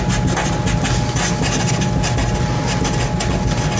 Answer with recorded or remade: recorded